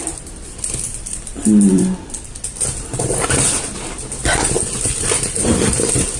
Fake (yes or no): yes